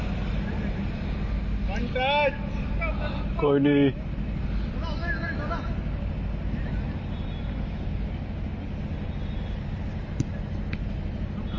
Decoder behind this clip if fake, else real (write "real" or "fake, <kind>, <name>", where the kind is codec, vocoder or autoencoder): real